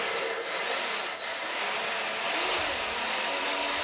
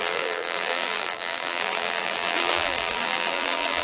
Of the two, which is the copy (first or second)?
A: second